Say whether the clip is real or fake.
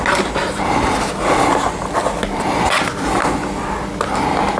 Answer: real